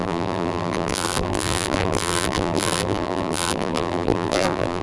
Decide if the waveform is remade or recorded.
remade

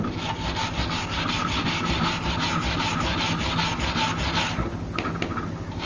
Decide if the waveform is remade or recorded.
recorded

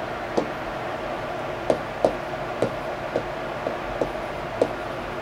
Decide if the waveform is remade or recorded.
recorded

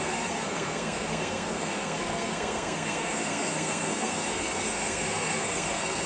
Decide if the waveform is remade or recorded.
remade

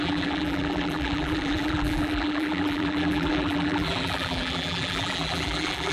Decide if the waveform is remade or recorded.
remade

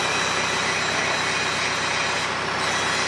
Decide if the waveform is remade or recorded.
recorded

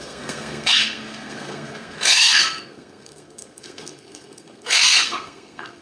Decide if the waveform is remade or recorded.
remade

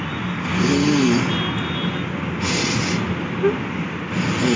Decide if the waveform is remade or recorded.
recorded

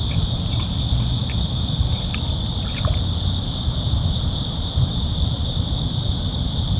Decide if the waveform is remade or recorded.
recorded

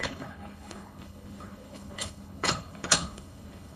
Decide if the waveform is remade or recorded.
remade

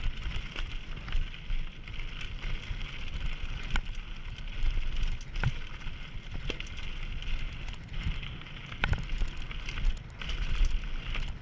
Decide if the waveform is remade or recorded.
recorded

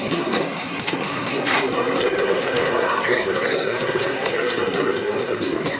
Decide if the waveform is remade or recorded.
remade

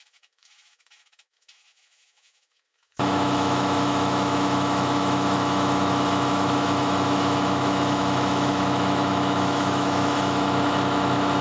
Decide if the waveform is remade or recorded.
remade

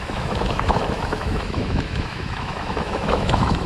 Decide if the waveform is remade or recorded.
remade